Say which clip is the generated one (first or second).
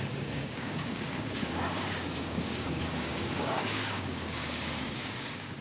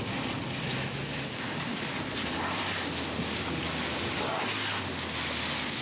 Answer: first